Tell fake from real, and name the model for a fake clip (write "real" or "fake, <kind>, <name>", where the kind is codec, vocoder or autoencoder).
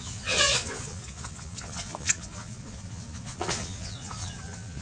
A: fake, vocoder, Vocos